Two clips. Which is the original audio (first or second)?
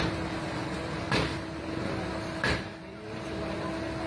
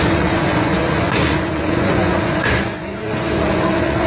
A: first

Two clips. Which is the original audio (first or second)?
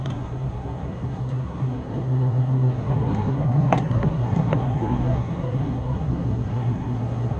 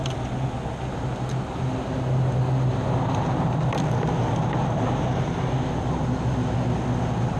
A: second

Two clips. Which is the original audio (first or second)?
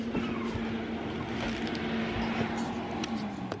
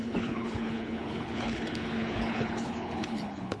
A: first